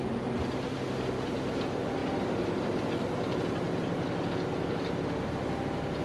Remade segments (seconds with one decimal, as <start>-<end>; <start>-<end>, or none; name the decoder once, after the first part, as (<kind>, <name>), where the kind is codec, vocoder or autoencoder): none